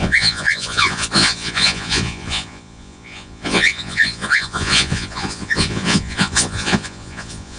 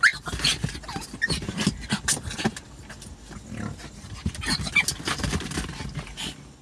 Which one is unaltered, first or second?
second